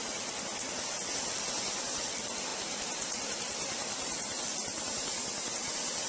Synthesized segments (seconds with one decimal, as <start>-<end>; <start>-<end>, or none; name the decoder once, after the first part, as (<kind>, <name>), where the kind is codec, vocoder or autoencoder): 2.5-4.4 (vocoder, BigVGAN v2)